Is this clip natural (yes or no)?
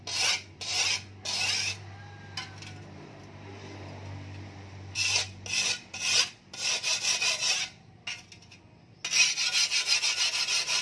yes